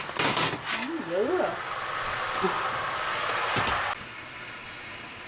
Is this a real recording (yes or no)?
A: yes